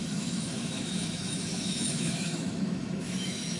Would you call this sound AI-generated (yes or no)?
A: yes